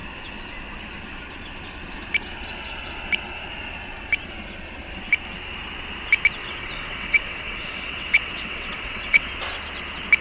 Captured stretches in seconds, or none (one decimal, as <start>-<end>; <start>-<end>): 0.0-6.4; 9.3-10.2